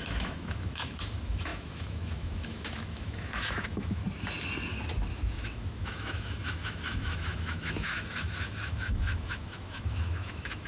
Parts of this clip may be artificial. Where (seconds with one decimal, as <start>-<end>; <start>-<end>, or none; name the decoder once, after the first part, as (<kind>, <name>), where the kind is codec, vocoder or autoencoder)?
0.0-4.0 (autoencoder, DAC-VAE); 5.1-10.7